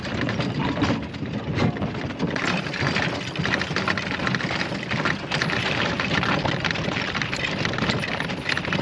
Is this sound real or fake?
real